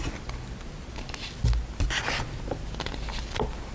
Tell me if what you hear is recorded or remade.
recorded